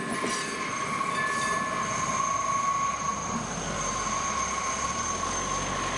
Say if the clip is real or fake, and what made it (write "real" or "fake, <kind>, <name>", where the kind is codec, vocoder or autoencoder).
real